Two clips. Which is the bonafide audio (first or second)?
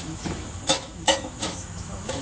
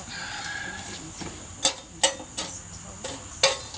second